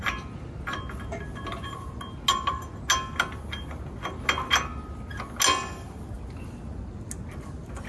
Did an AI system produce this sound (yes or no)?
no